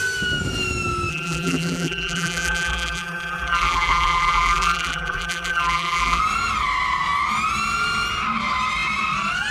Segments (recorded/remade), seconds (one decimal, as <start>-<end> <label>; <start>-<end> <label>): 0.0-1.1 recorded; 1.1-6.2 remade; 6.2-9.5 recorded